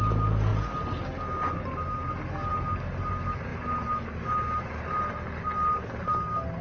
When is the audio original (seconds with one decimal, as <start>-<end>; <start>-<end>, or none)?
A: 0.0-6.6